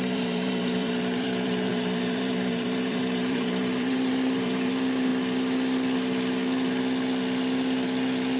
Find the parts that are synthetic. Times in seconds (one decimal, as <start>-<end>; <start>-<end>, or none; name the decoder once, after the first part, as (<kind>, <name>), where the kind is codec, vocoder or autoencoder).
0.0-5.1 (vocoder, BigVGAN v2)